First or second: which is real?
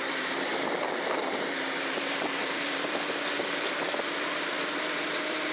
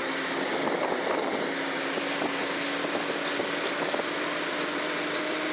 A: second